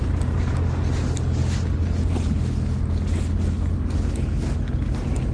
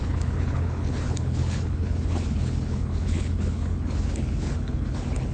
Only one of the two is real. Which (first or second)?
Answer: first